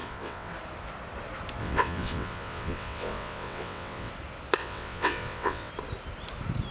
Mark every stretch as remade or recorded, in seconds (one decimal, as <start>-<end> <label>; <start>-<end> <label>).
0.0-0.5 remade; 0.5-1.6 recorded; 1.6-4.1 remade; 4.1-4.6 recorded; 4.6-5.7 remade; 5.7-6.7 recorded